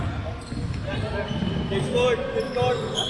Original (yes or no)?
yes